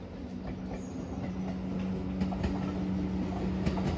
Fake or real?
real